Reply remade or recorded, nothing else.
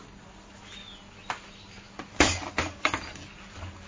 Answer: recorded